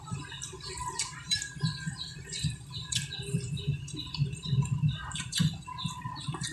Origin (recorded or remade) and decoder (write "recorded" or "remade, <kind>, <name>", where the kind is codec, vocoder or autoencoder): remade, vocoder, BigVGAN v2